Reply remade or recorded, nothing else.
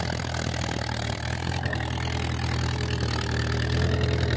recorded